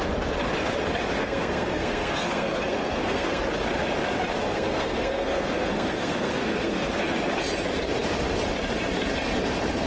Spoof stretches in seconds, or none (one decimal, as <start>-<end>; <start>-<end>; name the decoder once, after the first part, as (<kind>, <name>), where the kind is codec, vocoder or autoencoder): 1.2-3.4 (codec, SNAC); 4.4-6.9